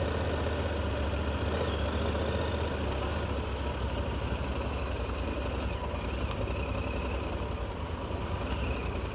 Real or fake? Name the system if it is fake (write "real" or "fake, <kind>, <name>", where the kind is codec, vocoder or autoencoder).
real